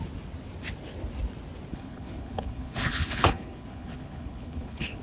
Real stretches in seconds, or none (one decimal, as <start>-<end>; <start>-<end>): 0.0-1.7